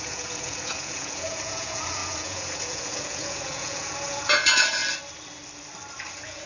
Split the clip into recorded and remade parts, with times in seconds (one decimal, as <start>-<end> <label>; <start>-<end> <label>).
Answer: 0.0-4.8 remade; 4.8-6.1 recorded; 6.1-6.5 remade